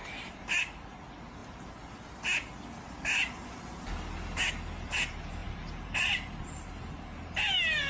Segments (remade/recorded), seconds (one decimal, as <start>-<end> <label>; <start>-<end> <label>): 0.0-0.6 remade; 0.6-5.4 recorded; 5.4-6.9 remade; 6.9-7.9 recorded